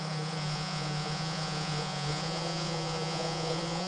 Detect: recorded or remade remade